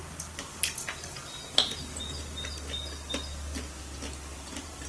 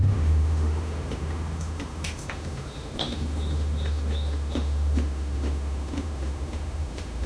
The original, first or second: first